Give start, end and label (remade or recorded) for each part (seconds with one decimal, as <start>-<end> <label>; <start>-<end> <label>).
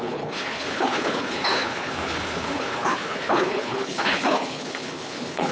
0.0-5.5 remade